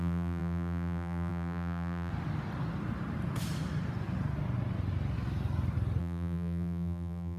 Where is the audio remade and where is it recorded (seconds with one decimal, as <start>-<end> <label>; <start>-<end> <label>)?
0.0-2.1 remade; 2.1-6.0 recorded; 6.0-7.4 remade